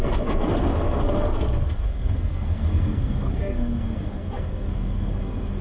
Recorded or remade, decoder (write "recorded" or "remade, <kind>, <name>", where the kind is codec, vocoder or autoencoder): remade, codec, SNAC